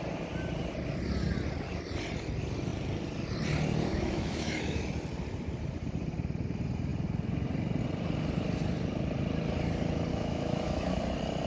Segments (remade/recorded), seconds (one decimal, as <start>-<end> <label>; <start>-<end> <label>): 0.0-3.9 recorded; 3.9-4.8 remade; 4.8-10.1 recorded; 10.1-11.0 remade; 11.0-11.5 recorded